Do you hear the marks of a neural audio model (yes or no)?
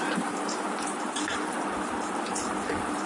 yes